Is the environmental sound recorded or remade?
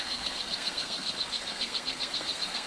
remade